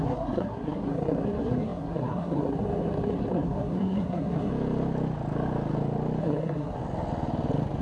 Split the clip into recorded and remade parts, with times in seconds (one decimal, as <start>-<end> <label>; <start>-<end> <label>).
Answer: 0.0-4.5 remade; 4.5-6.2 recorded; 6.2-6.8 remade; 6.8-7.8 recorded